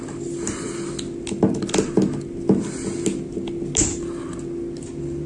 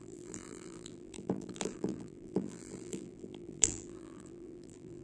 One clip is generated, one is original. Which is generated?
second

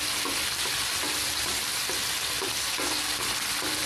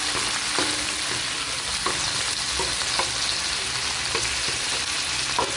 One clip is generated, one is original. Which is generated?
first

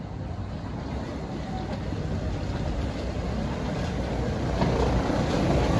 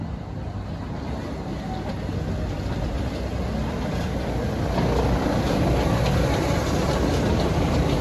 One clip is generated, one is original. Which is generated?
first